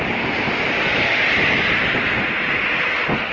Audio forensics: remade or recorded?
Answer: recorded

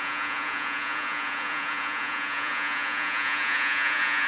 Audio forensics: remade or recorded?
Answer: remade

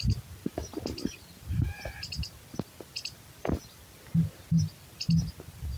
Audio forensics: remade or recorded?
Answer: recorded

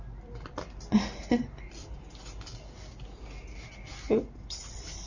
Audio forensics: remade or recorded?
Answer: recorded